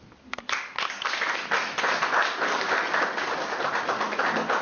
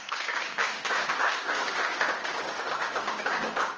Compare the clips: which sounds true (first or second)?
first